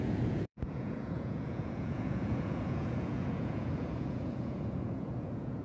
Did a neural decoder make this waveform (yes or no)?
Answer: yes